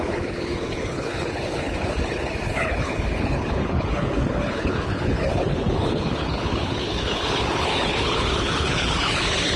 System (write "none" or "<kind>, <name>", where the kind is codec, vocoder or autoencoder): codec, HILCodec